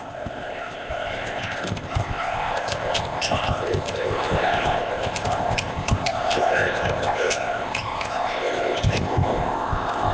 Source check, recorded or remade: remade